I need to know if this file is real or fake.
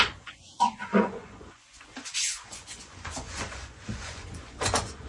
fake